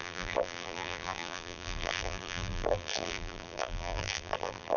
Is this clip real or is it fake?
fake